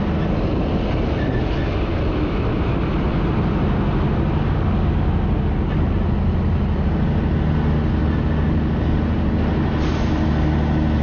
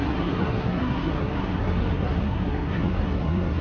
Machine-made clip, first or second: second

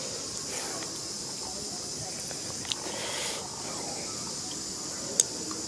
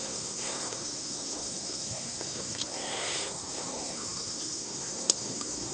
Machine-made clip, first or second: second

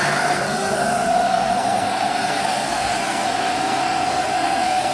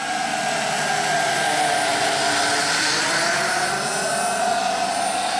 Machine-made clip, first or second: first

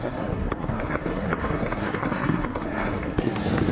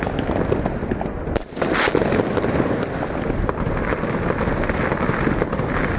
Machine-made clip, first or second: first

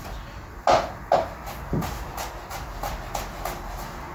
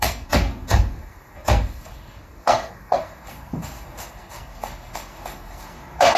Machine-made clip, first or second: second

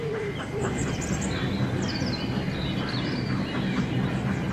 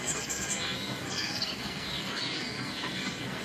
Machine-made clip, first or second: second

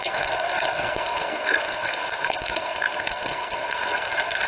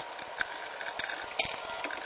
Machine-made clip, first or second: first